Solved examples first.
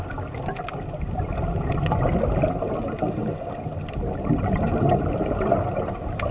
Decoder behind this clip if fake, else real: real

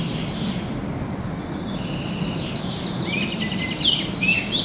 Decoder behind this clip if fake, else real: real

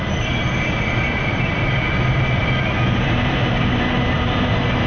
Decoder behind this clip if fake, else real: real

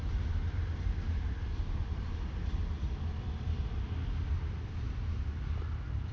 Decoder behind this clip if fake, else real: real